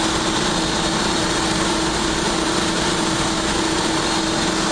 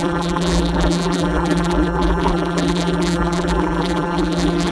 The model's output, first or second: second